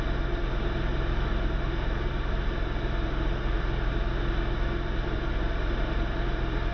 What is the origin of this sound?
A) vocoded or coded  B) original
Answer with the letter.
B